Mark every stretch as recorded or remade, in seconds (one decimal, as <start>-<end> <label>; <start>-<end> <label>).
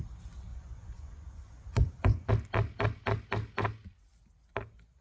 0.0-0.5 recorded; 0.5-2.3 remade; 2.3-5.0 recorded